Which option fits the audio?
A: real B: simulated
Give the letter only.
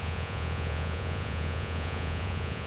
B